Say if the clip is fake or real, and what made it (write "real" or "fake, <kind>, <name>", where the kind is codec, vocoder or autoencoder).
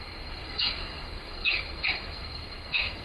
fake, codec, SNAC